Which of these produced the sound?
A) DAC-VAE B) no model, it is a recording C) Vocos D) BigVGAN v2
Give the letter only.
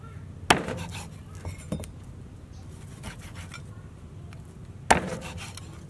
B